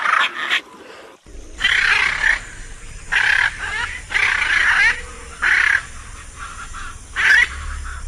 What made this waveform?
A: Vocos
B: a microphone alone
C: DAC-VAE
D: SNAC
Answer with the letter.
B